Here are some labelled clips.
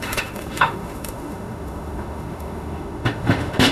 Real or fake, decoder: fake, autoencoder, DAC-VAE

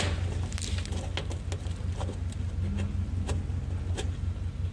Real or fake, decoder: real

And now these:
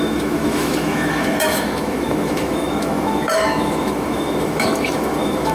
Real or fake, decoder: fake, autoencoder, DAC-VAE